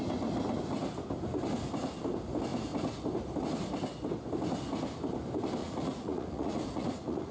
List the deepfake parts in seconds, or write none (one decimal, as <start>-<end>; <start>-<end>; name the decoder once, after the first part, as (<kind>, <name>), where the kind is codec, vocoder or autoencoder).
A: 5.6-7.3 (vocoder, Vocos)